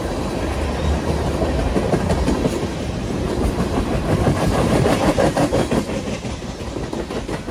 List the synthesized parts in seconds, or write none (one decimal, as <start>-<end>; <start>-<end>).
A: 2.7-6.9